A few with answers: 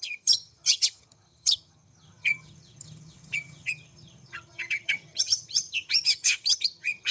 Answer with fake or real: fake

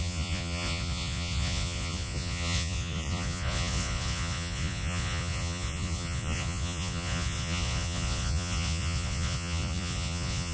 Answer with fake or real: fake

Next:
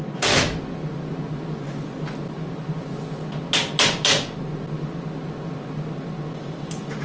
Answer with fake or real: real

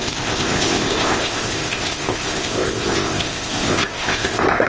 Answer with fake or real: fake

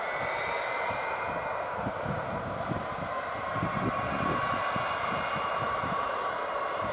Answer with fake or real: fake